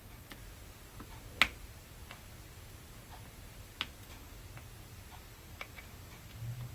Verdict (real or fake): real